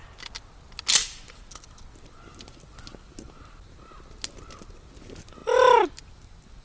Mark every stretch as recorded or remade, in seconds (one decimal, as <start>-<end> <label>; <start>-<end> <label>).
0.0-6.6 recorded